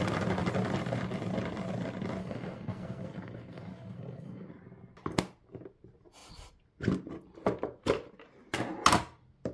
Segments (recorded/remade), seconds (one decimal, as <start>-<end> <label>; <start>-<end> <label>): 0.0-2.2 recorded; 2.2-4.5 remade; 4.5-9.5 recorded

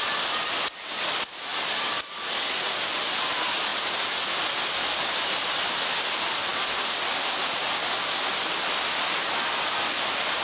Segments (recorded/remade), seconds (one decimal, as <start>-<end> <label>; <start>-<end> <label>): 0.0-1.5 recorded; 1.5-2.1 remade; 2.1-6.5 recorded; 6.5-7.4 remade; 7.4-10.4 recorded

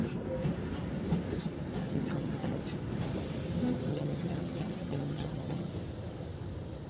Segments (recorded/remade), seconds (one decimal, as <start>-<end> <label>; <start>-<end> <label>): 0.0-1.8 recorded; 1.8-2.6 remade; 2.6-3.9 recorded; 3.9-5.7 remade; 5.7-6.9 recorded

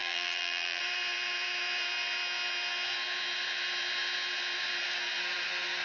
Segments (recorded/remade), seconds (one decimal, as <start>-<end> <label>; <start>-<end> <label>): 0.0-0.8 remade; 0.8-5.8 recorded

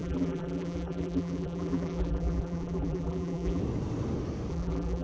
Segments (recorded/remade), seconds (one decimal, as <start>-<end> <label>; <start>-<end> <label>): 0.0-3.6 remade; 3.6-4.5 recorded; 4.5-5.0 remade

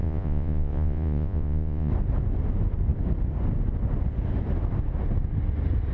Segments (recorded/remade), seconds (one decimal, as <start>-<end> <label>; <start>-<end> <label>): 0.0-1.9 remade; 1.9-5.9 recorded

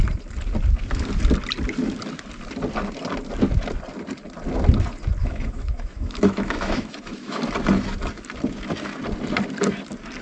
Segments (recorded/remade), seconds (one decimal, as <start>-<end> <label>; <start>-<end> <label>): 0.0-5.2 recorded; 5.2-7.4 remade; 7.4-10.2 recorded

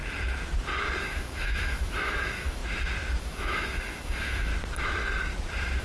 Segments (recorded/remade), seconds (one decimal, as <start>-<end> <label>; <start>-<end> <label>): 0.0-1.0 recorded; 1.0-2.6 remade; 2.6-3.2 recorded; 3.2-4.5 remade; 4.5-5.8 recorded